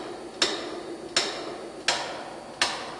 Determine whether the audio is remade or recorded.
recorded